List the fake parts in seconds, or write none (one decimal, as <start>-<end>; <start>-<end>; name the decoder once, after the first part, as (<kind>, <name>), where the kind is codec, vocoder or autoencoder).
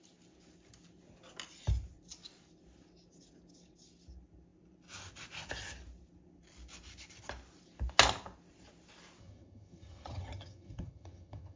9.2-11.6 (vocoder, HiFi-GAN)